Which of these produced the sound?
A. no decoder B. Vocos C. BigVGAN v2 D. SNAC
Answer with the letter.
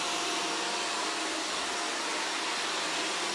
A